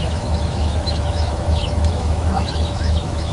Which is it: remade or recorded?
remade